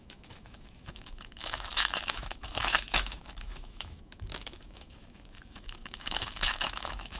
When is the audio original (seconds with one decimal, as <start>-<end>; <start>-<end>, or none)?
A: none

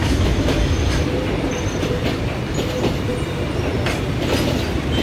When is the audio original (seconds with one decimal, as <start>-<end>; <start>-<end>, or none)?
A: 0.5-5.0

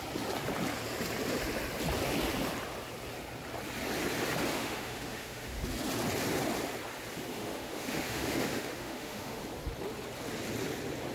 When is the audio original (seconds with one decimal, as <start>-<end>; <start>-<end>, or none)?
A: 0.0-4.5; 5.6-7.3; 9.4-11.1

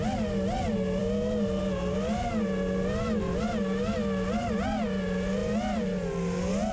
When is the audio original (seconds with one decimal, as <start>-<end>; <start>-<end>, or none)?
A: 0.0-6.7

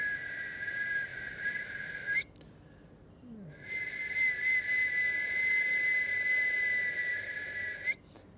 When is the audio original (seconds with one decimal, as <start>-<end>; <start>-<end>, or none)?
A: 0.0-8.4